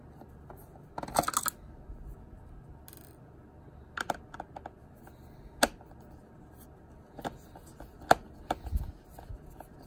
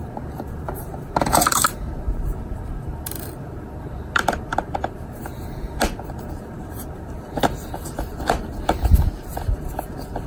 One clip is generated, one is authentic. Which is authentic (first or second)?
first